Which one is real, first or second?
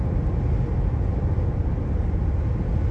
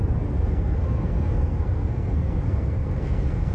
first